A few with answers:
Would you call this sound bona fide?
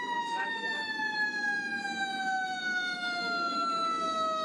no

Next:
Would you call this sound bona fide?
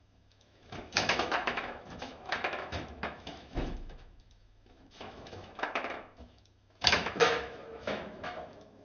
no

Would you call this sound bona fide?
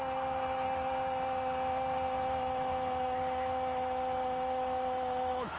no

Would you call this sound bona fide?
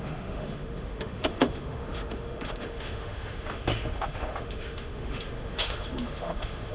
no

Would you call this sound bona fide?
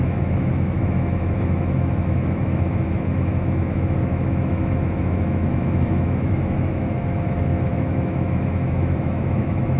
no